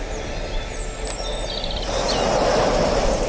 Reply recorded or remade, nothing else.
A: recorded